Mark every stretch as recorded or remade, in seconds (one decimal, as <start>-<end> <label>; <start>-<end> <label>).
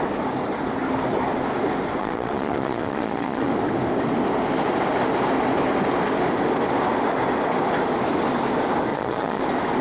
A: 0.0-2.0 recorded; 2.0-3.5 remade; 3.5-8.9 recorded; 8.9-9.4 remade; 9.4-9.8 recorded